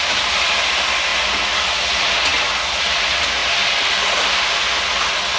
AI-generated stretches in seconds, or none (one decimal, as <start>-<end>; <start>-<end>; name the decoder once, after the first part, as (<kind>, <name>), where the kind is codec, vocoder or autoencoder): none